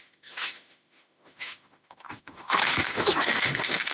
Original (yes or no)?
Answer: no